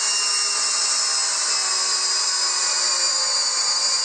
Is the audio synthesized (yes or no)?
no